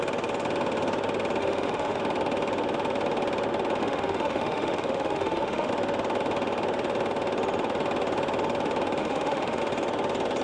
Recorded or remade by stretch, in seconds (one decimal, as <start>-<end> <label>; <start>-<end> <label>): 0.0-1.4 recorded; 1.4-2.0 remade; 2.0-3.8 recorded; 3.8-5.7 remade; 5.7-9.0 recorded; 9.0-9.6 remade; 9.6-10.4 recorded